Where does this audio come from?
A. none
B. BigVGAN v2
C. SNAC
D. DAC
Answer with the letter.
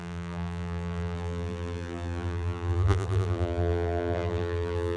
B